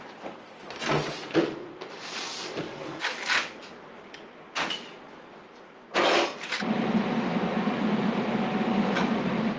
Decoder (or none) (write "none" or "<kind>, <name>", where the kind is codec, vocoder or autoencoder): none